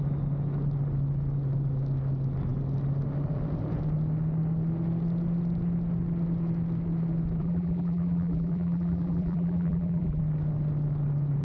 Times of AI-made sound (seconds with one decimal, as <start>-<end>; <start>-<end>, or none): 7.4-10.2